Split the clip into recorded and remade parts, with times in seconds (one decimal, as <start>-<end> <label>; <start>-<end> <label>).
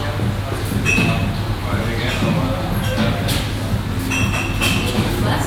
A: 0.0-5.5 recorded